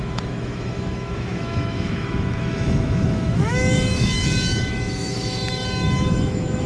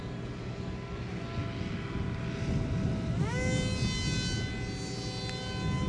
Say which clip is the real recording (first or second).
second